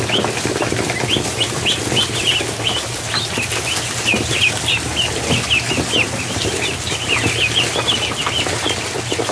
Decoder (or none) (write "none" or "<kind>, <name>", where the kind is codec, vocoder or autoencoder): none